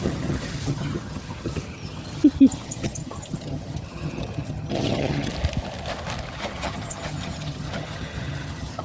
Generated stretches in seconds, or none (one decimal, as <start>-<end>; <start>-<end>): 0.0-5.3; 6.3-8.8